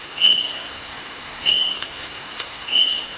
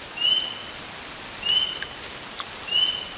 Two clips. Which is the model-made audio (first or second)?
first